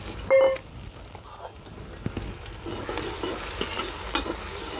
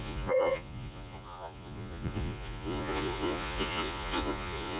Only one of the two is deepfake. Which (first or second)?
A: second